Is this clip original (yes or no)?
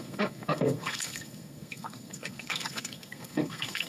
no